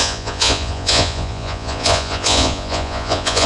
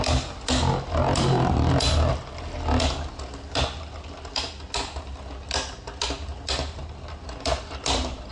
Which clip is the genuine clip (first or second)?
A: second